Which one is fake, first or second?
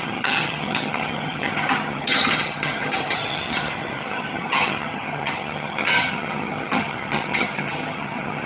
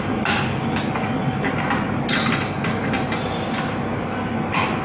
first